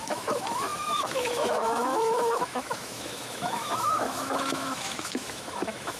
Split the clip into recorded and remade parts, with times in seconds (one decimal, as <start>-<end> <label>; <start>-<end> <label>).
0.0-6.0 remade